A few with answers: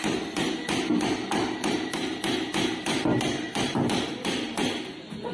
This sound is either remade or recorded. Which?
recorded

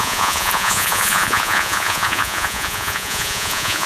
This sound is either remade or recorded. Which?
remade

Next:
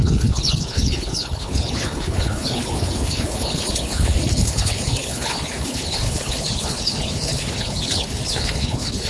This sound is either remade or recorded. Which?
remade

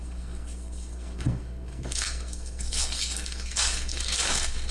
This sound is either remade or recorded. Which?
remade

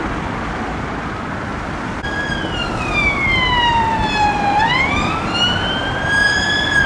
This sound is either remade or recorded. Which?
remade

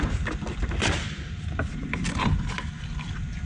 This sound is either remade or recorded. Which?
remade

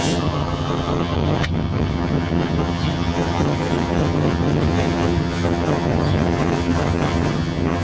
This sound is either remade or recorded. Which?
remade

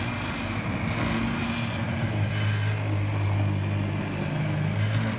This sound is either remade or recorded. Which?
recorded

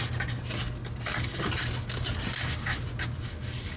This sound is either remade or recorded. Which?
recorded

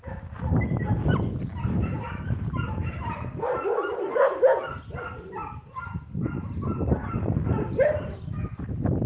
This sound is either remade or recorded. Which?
recorded